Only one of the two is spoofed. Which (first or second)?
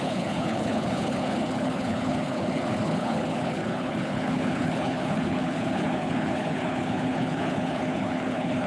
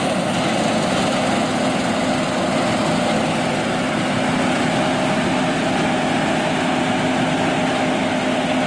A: first